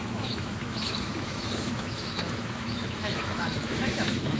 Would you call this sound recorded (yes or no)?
no